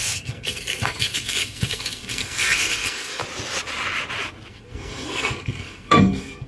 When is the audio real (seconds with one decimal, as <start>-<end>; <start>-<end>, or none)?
3.2-4.5